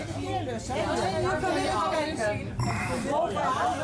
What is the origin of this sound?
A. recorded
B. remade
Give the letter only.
A